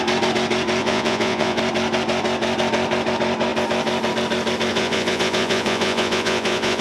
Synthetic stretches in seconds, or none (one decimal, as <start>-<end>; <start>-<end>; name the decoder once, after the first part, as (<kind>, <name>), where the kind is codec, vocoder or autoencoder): 0.8-1.6 (vocoder, Vocos); 4.7-6.8